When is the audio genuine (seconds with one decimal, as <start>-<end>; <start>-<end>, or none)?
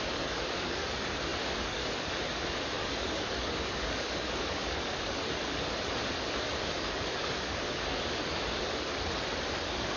5.2-6.6; 8.7-9.5